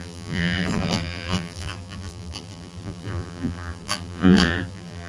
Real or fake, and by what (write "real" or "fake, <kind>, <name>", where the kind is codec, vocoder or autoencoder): fake, vocoder, BigVGAN v2